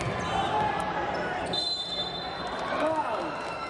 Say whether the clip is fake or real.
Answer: real